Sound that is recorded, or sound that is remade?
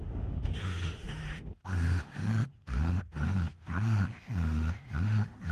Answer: remade